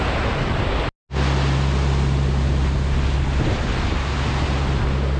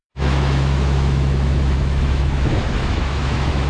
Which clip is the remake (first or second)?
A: second